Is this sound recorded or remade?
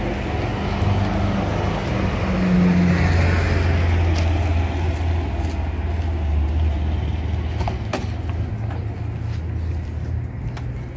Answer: recorded